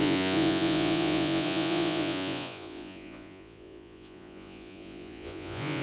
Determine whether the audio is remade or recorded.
remade